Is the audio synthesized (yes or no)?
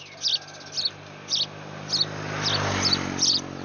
no